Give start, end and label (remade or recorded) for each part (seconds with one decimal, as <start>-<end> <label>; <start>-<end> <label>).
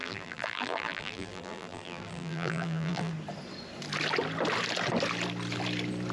0.0-3.1 remade; 3.1-6.1 recorded